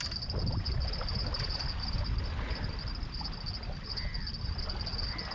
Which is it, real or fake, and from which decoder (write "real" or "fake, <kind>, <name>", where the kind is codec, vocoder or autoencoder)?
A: real